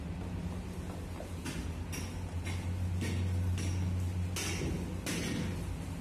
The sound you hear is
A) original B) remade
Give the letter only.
A